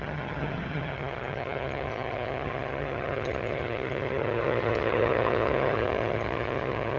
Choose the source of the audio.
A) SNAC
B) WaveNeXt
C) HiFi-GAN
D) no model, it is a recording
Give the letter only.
C